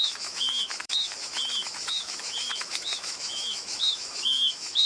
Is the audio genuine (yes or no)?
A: no